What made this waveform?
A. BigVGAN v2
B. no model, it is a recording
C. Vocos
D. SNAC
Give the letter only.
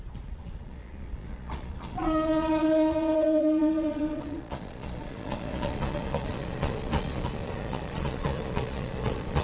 C